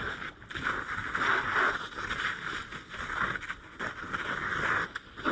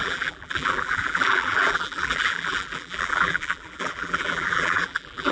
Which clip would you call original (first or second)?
first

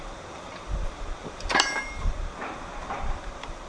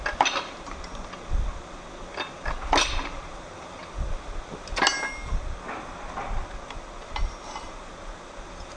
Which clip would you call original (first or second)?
second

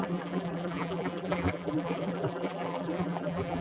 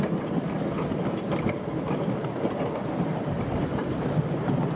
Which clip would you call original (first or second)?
second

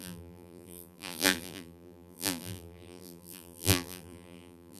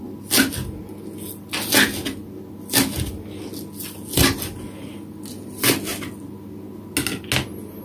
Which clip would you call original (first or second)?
second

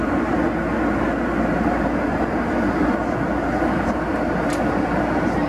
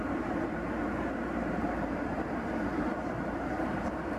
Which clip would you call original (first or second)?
first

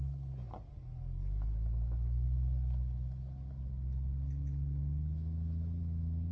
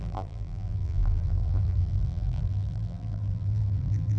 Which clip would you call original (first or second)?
first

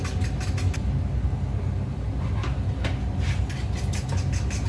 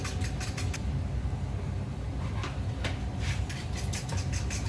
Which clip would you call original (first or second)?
first